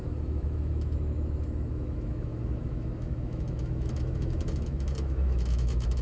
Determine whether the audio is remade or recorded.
remade